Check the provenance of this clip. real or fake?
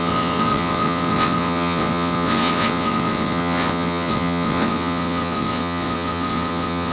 fake